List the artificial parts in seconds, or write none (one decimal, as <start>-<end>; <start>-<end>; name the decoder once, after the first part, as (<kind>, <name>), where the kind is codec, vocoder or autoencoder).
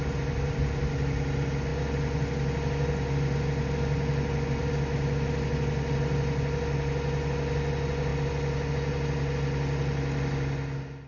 none